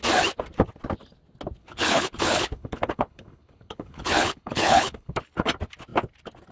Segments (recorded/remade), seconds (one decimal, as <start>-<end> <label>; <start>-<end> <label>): 0.0-1.6 recorded; 1.6-5.5 remade; 5.5-6.5 recorded